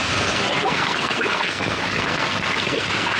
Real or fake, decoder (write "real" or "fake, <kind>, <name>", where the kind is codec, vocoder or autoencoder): fake, codec, SNAC